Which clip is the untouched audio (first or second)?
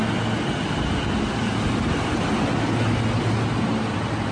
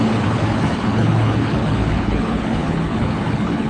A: first